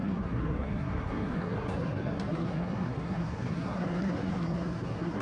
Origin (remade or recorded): remade